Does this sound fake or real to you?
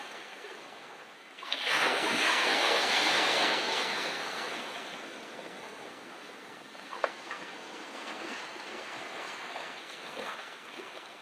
fake